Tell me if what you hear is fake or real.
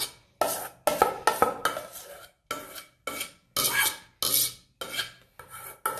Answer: real